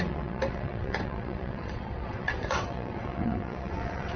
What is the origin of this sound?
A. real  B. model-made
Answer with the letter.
B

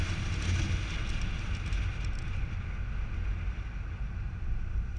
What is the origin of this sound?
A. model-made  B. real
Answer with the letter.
B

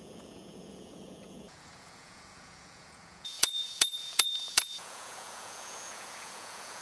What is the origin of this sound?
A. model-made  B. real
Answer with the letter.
A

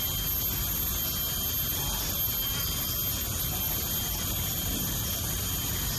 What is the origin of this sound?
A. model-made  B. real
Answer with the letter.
B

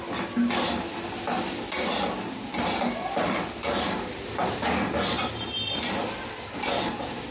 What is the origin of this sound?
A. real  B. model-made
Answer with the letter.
A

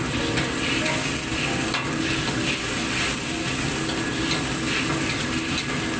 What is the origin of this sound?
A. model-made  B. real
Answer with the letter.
B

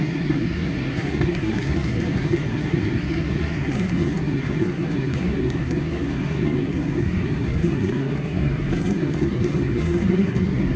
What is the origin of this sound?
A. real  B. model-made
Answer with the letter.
B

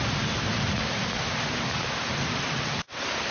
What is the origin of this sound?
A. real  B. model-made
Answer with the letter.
A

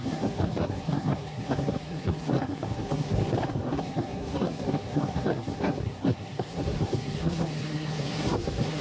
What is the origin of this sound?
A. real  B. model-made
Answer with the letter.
B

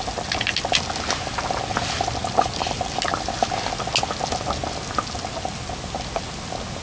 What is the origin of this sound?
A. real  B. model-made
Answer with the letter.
A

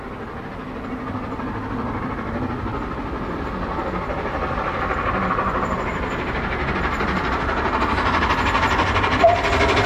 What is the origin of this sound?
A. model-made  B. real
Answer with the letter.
B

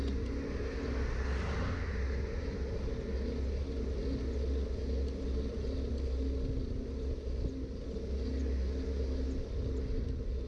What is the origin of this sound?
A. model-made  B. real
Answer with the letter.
B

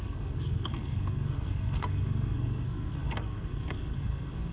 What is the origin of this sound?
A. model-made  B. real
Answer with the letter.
A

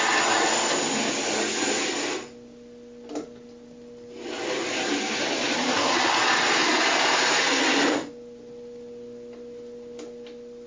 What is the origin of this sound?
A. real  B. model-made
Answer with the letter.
A